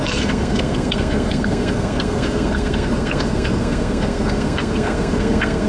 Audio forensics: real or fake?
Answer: fake